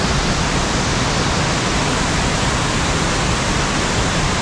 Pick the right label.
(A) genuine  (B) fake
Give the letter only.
A